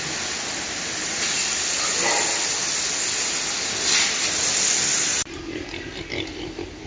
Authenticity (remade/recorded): recorded